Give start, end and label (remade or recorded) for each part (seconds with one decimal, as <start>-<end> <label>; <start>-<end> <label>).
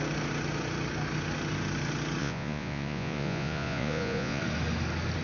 0.0-2.2 recorded; 2.2-4.4 remade; 4.4-5.2 recorded